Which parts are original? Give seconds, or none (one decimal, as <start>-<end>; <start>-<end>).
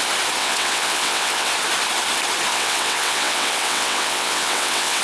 0.0-0.4; 1.5-2.5